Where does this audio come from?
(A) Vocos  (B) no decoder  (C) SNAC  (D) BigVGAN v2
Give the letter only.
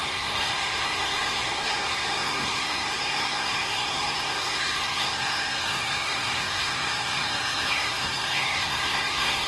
C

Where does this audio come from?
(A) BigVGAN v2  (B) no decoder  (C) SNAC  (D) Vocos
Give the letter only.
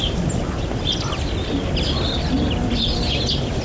B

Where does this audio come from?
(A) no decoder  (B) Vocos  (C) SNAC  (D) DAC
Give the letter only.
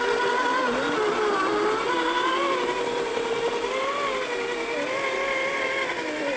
A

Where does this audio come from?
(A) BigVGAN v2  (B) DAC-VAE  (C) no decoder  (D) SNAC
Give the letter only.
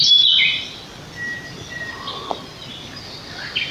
C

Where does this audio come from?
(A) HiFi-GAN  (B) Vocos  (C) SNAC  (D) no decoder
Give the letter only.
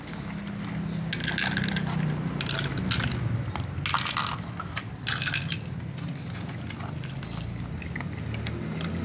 D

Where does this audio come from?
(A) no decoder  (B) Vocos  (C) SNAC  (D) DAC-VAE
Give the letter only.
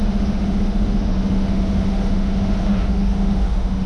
D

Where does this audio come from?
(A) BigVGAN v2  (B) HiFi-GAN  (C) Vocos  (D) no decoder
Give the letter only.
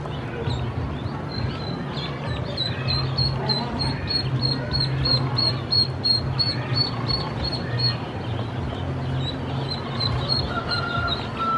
D